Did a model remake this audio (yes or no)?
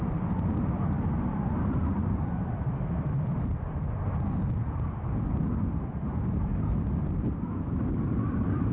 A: no